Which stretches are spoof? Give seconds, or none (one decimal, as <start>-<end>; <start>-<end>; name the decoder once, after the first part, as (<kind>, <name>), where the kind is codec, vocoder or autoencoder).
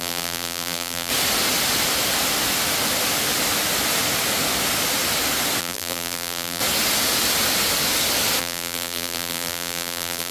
0.0-1.1 (vocoder, BigVGAN v2); 5.6-6.6; 8.4-10.3